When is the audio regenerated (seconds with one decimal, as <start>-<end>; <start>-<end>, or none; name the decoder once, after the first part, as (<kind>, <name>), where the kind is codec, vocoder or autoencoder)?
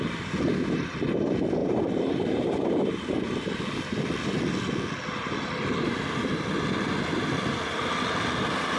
0.0-8.8 (vocoder, BigVGAN v2)